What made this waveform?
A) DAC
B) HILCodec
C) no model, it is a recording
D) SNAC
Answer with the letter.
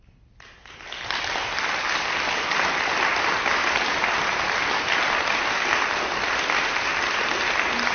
C